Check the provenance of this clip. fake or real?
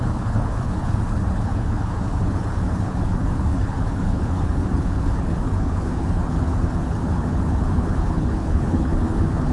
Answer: fake